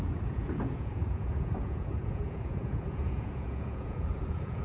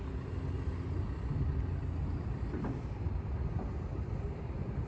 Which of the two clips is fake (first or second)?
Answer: first